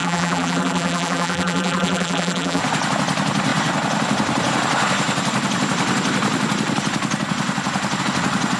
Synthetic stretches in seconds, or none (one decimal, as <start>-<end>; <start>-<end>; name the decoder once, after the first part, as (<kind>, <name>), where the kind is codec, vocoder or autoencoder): 0.0-2.6 (vocoder, BigVGAN v2)